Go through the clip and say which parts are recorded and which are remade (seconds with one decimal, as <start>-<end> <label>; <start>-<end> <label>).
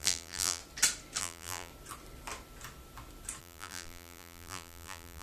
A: 0.0-0.6 remade; 0.6-1.2 recorded; 1.2-1.7 remade; 1.7-3.4 recorded; 3.4-5.2 remade